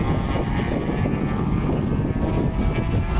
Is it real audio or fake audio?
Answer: real